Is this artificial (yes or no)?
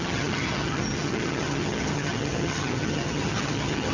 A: yes